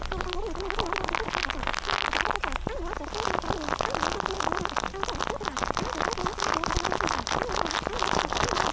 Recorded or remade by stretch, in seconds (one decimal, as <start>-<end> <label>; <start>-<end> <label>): 0.0-8.7 recorded